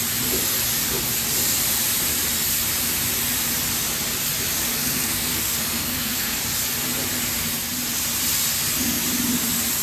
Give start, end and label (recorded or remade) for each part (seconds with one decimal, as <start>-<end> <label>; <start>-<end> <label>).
0.0-4.7 recorded; 4.7-6.4 remade; 6.4-9.8 recorded